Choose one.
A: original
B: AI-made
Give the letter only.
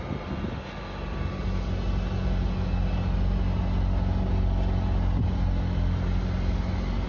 A